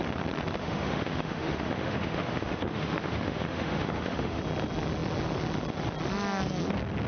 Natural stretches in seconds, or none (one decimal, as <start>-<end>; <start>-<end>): 0.0-0.6; 4.4-7.1